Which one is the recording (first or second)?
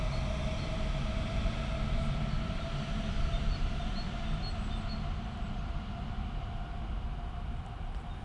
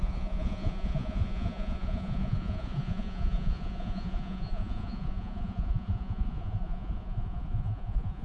first